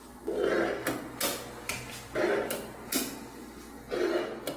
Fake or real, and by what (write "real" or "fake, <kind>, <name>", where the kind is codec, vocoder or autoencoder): real